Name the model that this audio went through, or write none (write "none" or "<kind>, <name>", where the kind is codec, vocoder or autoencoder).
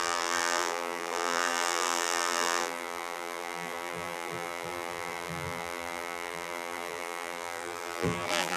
vocoder, BigVGAN v2